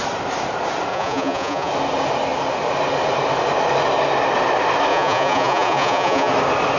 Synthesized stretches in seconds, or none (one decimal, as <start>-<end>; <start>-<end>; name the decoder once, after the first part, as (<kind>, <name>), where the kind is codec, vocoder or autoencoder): 0.9-1.7 (vocoder, Vocos); 4.9-6.3